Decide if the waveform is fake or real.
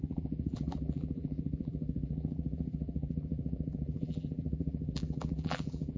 fake